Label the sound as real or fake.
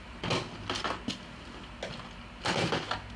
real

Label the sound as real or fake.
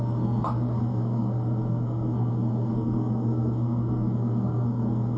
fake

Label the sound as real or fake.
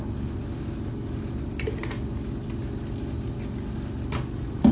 real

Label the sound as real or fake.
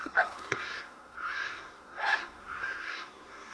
fake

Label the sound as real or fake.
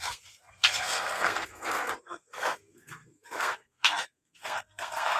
fake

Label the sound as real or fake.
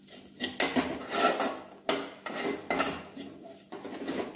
real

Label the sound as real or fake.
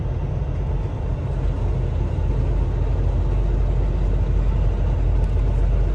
real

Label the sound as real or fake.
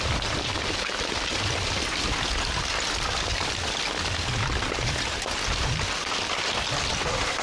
real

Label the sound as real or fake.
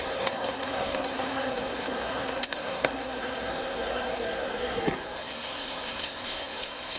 fake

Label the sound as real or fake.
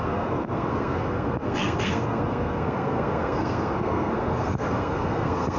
fake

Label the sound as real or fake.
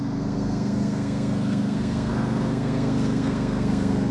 fake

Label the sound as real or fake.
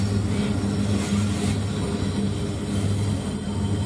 real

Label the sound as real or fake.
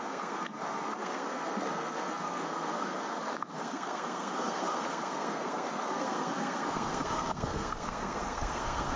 fake